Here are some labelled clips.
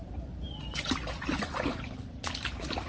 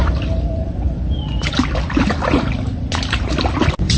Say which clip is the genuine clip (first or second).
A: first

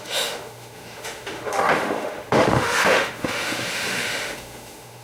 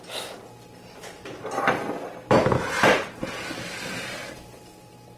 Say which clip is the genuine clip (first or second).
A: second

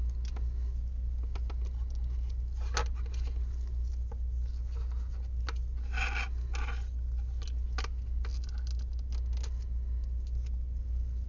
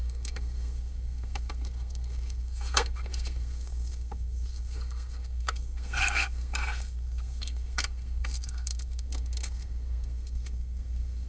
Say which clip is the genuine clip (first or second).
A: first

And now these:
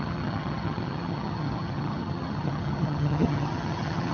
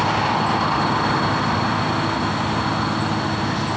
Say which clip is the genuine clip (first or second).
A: second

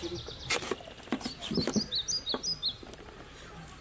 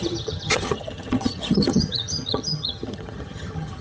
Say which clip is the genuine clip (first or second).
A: first